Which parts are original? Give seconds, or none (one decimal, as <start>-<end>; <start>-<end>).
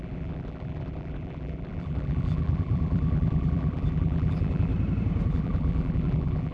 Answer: 4.7-5.3